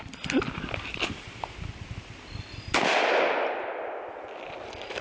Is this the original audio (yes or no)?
yes